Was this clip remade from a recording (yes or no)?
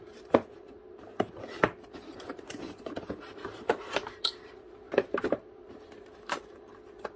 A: yes